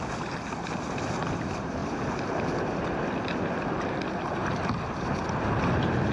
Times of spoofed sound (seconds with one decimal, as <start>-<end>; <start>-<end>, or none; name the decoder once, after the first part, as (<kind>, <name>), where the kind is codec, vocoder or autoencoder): none